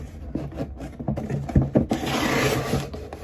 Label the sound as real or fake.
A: real